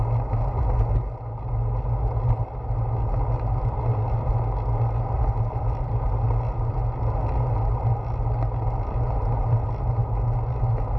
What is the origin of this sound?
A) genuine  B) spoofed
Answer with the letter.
A